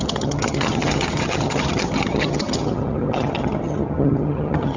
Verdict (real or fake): fake